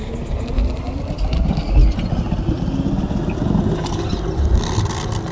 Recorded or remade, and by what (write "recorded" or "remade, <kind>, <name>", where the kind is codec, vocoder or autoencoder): recorded